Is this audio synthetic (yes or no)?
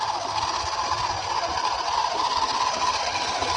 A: yes